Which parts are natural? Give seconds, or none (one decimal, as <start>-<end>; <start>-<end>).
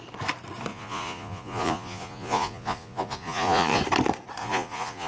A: 0.0-0.7; 3.8-4.4